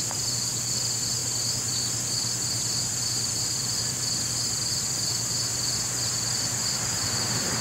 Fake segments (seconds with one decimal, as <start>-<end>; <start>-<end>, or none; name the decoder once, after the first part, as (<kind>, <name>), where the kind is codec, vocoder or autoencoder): 0.0-1.2 (vocoder, BigVGAN v2); 2.8-5.5; 6.7-7.6